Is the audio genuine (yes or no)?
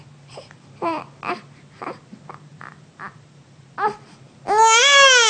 yes